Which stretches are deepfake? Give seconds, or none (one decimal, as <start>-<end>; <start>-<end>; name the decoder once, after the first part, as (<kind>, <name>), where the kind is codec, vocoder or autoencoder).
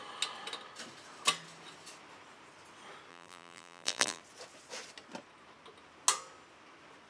3.1-4.2 (vocoder, BigVGAN v2)